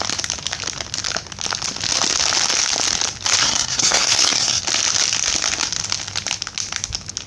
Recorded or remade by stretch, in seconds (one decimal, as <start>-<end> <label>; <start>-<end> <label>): 0.0-3.4 recorded; 3.4-4.6 remade; 4.6-7.3 recorded